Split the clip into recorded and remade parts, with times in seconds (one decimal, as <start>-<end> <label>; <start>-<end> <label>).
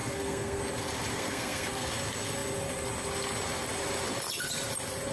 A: 0.0-0.6 remade; 0.6-1.1 recorded; 1.1-1.9 remade; 1.9-5.1 recorded